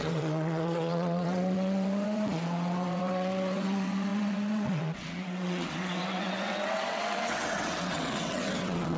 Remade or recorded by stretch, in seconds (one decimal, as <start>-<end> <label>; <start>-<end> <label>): 0.0-9.0 remade